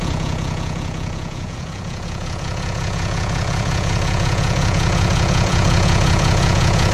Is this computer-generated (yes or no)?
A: yes